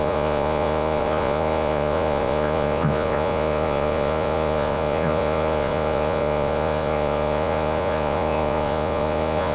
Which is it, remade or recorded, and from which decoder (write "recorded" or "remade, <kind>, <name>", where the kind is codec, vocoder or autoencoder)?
remade, vocoder, Vocos